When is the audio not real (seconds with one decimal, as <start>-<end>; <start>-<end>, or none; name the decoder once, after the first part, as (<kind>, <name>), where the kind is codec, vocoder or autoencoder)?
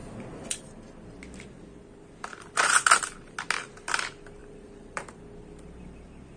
4.4-5.1 (vocoder, BigVGAN v2)